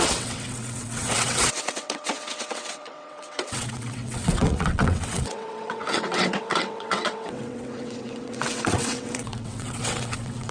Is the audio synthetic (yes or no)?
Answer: yes